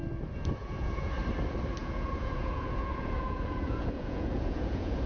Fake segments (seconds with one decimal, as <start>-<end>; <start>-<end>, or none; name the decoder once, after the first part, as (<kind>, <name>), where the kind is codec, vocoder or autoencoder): 0.6-1.1 (vocoder, Vocos); 1.8-5.1